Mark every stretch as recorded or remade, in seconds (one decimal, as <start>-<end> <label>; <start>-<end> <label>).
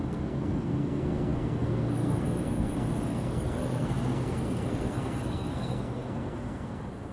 0.0-7.1 remade